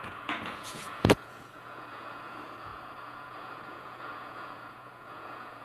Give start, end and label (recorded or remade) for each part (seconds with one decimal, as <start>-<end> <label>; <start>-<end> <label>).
0.0-5.6 remade